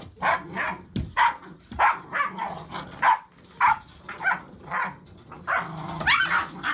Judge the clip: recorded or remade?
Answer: recorded